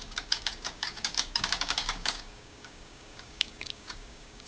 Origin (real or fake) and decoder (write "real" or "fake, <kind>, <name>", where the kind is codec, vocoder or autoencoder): fake, codec, DAC